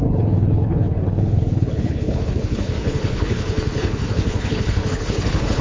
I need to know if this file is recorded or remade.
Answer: remade